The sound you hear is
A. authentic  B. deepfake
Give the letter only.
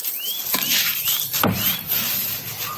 A